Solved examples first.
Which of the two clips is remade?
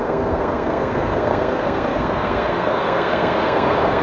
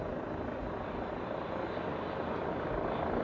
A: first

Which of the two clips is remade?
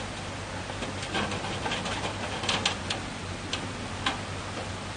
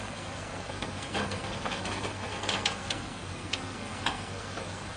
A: second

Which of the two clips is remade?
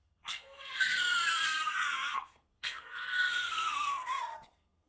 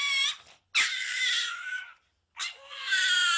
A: first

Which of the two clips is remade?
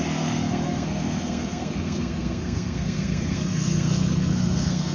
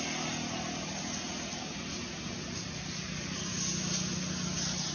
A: first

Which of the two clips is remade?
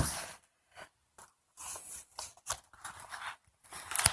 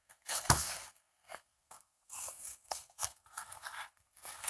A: second